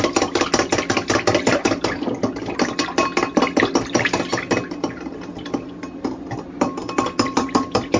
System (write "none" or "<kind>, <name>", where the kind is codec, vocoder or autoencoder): none